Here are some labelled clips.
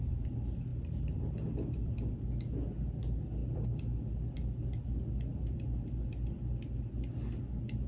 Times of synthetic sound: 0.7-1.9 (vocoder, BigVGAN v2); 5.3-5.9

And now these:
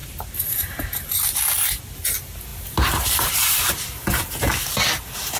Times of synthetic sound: 0.0-1.8 (vocoder, BigVGAN v2); 2.5-3.7

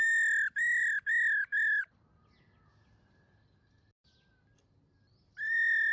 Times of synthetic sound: none

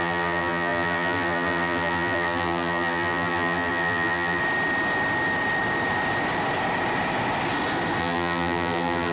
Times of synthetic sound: 0.0-4.4 (vocoder, BigVGAN v2); 8.0-9.1